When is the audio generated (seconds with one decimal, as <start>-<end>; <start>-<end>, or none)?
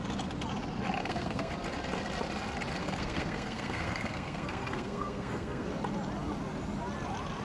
1.0-1.5; 2.8-5.7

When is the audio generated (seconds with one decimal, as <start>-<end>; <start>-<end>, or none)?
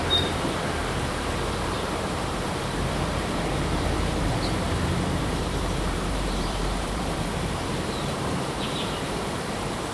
0.0-9.9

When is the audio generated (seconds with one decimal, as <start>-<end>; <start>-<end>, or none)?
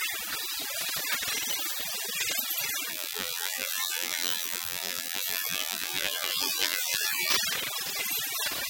2.9-7.3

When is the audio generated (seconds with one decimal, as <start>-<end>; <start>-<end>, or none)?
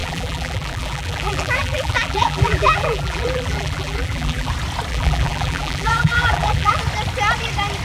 0.0-4.5; 4.9-6.8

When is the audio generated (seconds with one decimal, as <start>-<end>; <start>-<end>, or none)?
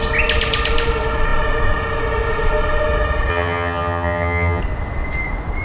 3.3-4.6